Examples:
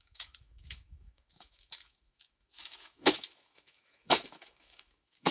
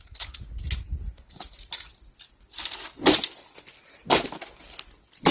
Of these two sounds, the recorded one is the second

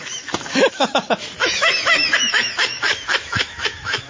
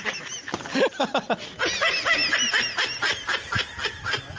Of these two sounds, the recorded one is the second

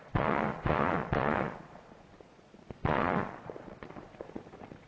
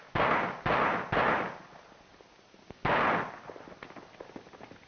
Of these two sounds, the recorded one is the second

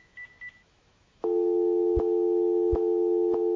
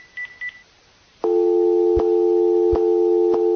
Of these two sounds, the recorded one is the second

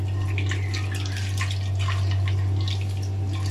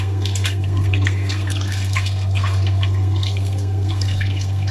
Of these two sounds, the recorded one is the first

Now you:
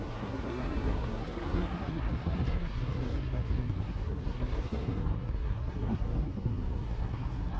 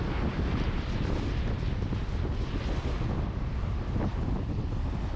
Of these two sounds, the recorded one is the second